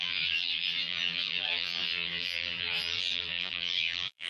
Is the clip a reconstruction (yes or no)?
yes